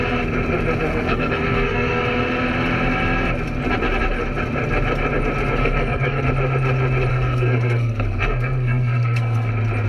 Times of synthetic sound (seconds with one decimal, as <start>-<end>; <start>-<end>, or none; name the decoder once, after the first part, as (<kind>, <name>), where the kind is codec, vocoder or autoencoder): 0.9-2.0 (codec, SNAC); 5.6-6.2; 7.1-9.5